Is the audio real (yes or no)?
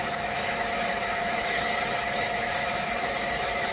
no